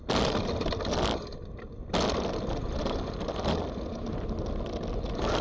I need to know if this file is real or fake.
real